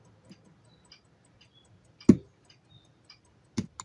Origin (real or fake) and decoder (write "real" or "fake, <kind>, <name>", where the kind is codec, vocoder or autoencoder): real